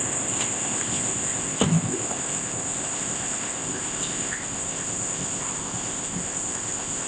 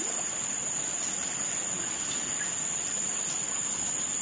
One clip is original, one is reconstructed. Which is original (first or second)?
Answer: second